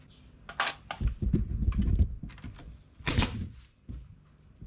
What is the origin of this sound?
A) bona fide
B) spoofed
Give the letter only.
A